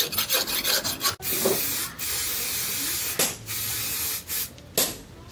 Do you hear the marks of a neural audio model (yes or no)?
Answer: no